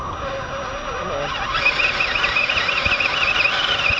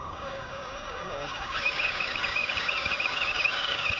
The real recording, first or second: first